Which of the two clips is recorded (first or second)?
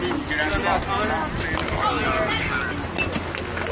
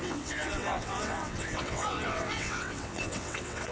first